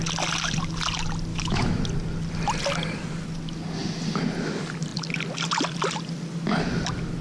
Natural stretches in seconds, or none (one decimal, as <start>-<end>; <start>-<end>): 0.0-1.3; 1.8-7.2